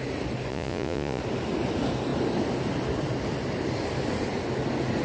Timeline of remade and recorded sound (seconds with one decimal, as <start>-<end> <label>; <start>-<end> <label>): 0.0-0.5 recorded; 0.5-1.2 remade; 1.2-5.0 recorded